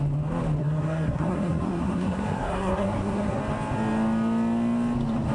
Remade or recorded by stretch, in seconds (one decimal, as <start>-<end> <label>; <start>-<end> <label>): 0.0-0.6 recorded; 0.6-3.4 remade; 3.4-5.3 recorded